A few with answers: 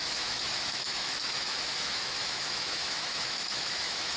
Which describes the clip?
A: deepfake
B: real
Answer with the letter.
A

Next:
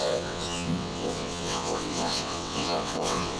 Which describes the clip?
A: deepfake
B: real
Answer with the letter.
A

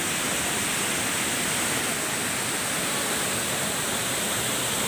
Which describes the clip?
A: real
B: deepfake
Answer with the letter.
A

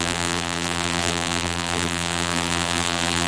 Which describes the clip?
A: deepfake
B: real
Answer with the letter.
A